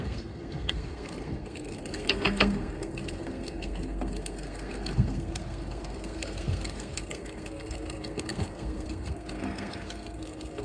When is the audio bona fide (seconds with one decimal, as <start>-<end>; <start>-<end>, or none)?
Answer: none